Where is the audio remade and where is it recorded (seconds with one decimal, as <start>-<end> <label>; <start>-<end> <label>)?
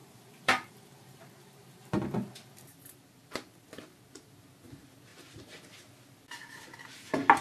0.0-1.8 remade; 1.8-7.4 recorded